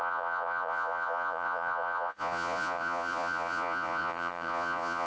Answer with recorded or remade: remade